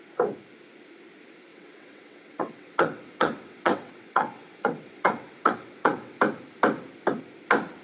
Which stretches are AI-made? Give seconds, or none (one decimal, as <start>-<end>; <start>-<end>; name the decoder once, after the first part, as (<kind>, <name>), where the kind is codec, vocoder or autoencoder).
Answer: 1.5-6.2 (vocoder, WaveNeXt)